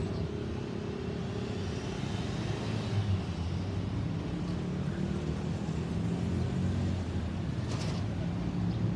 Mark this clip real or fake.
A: real